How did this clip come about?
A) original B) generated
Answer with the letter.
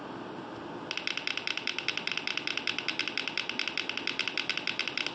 A